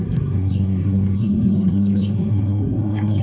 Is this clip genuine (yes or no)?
no